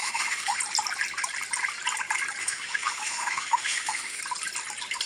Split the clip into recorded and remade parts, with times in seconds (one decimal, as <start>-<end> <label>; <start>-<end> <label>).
0.0-0.6 remade; 0.6-2.4 recorded; 2.4-4.2 remade; 4.2-5.1 recorded